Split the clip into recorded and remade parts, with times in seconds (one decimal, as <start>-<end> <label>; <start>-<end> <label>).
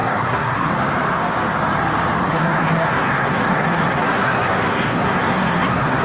0.0-0.7 remade; 0.7-2.2 recorded; 2.2-6.0 remade